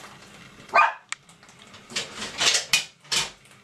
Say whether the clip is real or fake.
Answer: real